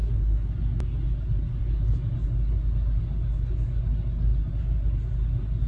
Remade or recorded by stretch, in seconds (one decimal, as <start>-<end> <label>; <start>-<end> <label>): 0.0-0.5 remade; 0.5-5.7 recorded